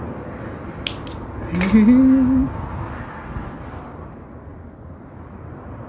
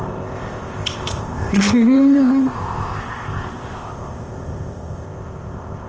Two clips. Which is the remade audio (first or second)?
second